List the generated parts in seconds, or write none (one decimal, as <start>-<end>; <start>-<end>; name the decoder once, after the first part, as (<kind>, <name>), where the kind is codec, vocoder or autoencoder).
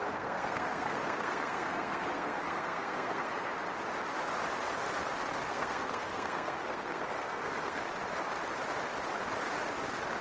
0.0-3.5 (codec, SNAC); 5.5-7.9